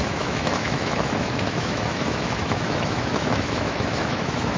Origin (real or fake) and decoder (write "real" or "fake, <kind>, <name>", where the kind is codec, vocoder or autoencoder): fake, autoencoder, DAC-VAE